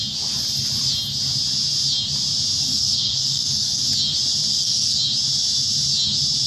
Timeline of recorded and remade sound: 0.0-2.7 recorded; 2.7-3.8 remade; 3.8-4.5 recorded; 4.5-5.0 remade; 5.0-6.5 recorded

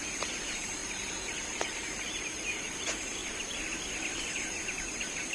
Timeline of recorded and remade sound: 0.0-3.2 remade; 3.2-4.3 recorded; 4.3-5.3 remade

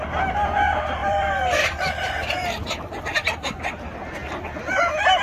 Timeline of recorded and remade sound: 0.0-1.0 recorded; 1.0-3.0 remade; 3.0-5.2 recorded

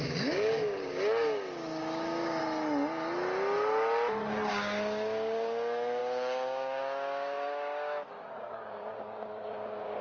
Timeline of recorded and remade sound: 0.0-2.4 remade; 2.4-4.5 recorded; 4.5-10.0 remade

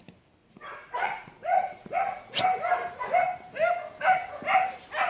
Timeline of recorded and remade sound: 0.0-0.4 recorded; 0.4-2.4 remade; 2.4-5.1 recorded